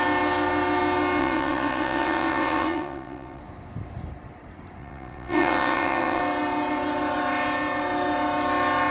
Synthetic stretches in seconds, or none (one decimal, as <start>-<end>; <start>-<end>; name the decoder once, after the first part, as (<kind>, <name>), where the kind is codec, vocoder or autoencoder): 1.2-3.4 (vocoder, WaveNeXt); 4.8-6.2